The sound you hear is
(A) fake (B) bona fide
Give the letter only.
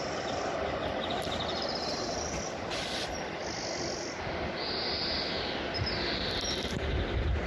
B